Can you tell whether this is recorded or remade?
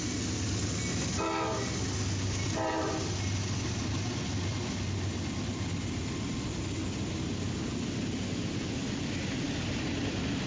recorded